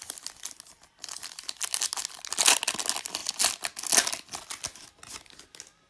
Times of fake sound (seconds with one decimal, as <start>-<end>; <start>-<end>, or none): none